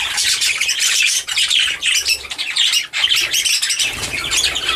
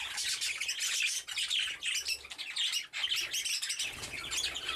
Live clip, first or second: second